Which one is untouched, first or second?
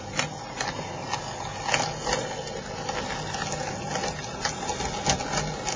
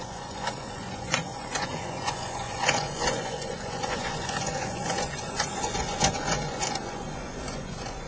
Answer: first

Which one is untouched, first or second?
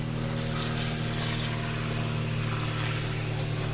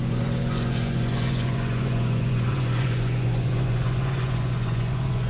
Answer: first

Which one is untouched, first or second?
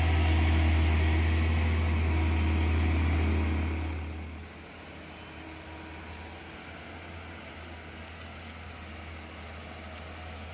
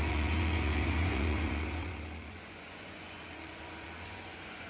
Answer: first